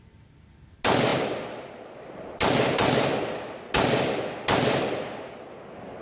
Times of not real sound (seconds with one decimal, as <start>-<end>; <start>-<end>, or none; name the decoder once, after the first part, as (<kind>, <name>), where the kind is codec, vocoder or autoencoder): none